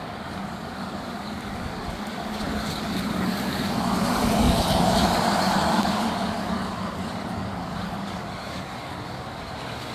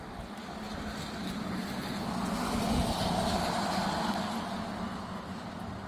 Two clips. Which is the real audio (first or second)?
second